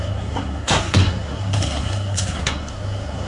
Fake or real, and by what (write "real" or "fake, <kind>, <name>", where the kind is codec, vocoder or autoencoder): fake, codec, SNAC